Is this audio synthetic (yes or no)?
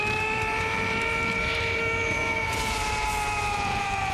yes